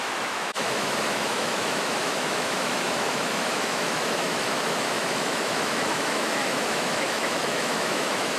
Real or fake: fake